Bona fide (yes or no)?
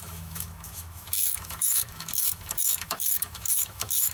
no